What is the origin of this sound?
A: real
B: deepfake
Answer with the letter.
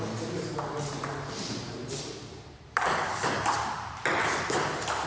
A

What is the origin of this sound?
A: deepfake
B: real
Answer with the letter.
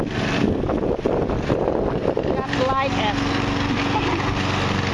B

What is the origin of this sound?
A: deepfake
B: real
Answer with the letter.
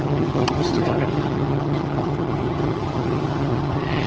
A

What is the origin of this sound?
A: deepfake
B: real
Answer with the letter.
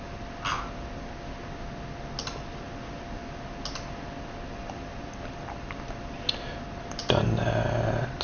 B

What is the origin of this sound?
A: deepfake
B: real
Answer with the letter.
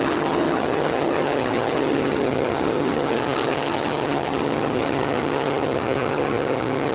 A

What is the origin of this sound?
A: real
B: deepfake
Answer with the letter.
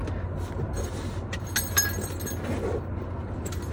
A